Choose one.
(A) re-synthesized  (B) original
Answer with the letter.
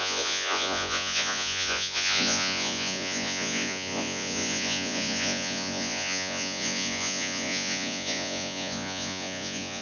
A